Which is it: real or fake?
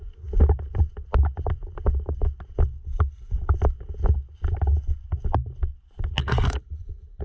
real